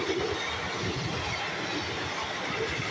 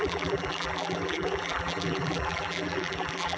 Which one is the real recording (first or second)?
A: first